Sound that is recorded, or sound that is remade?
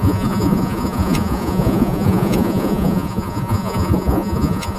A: remade